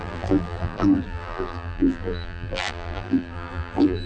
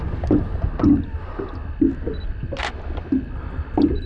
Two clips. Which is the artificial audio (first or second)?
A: first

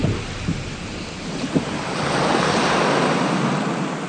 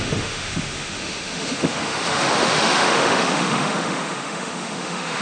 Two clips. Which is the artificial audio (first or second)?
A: second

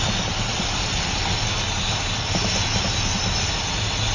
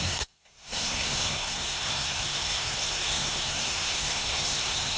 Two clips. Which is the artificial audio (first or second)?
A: second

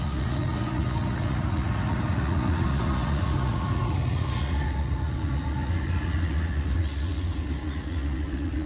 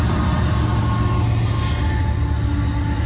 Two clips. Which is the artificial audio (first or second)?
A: first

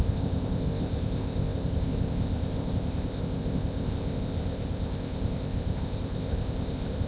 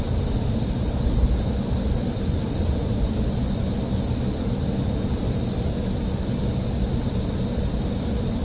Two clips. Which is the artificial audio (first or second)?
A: first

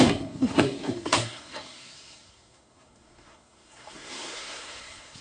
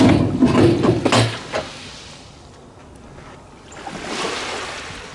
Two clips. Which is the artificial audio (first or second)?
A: first